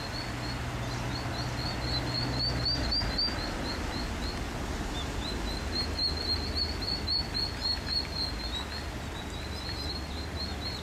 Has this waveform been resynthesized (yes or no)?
no